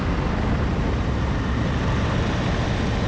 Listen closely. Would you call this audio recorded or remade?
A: recorded